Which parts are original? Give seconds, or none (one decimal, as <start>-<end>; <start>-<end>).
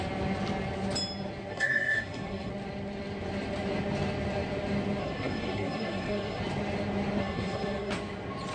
0.0-1.5; 2.5-5.0; 6.4-7.2; 7.9-8.5